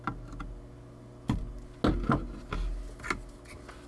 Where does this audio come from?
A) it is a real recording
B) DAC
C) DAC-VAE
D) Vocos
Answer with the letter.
A